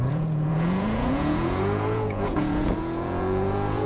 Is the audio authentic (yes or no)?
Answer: no